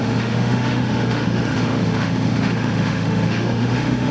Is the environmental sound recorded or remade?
remade